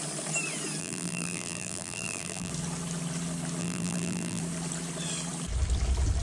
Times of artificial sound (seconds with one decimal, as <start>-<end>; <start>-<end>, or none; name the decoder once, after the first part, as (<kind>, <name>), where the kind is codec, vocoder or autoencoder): 0.8-2.5 (vocoder, BigVGAN v2); 3.6-4.4